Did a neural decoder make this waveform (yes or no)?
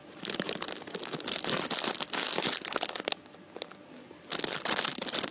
no